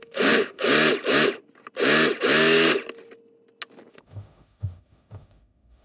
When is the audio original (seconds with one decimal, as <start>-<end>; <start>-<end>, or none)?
0.7-3.9